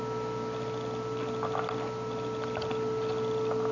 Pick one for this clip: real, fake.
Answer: real